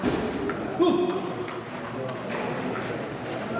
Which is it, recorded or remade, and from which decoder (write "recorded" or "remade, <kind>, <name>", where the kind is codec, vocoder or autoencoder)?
recorded